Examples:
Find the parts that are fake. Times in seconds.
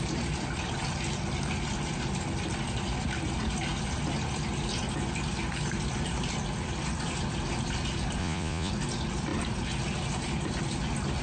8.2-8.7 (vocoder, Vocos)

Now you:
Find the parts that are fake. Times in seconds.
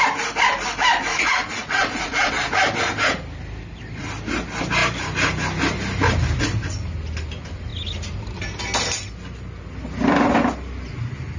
1.1-2.3 (vocoder, Vocos)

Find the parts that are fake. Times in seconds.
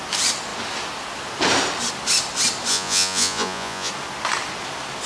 2.7-3.9 (vocoder, Vocos)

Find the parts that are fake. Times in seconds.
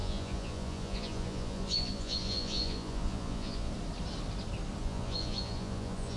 0.0-3.7 (vocoder, Vocos); 4.8-6.2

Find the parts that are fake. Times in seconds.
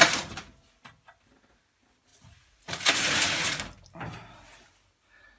2.1-3.6 (vocoder, Vocos)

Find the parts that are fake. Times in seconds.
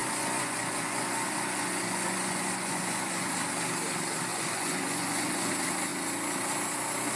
0.0-3.3 (vocoder, Vocos); 4.3-5.5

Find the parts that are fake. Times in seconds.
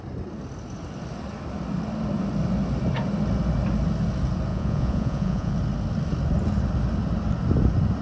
4.5-5.5 (vocoder, Vocos)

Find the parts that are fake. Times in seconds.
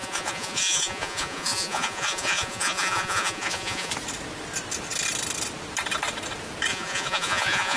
0.0-3.9 (vocoder, Vocos); 6.7-7.8